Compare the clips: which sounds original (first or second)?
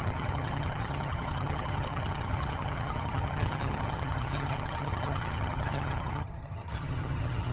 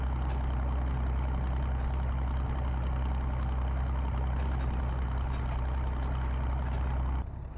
second